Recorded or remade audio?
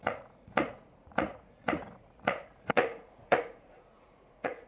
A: remade